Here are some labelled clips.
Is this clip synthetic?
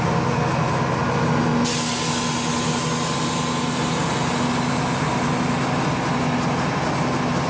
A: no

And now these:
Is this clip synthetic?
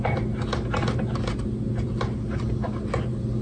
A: no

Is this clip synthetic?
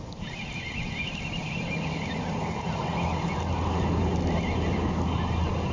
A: no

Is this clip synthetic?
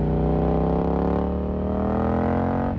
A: no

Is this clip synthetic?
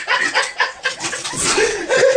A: yes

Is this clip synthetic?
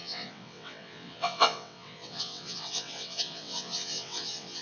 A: yes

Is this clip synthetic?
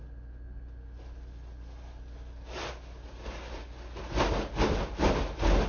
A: no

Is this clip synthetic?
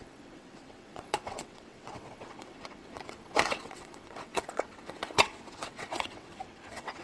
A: yes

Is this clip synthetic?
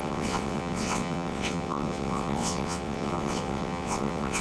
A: yes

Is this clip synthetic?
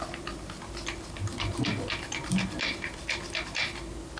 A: no